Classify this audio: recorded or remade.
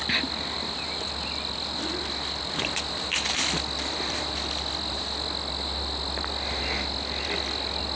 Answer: recorded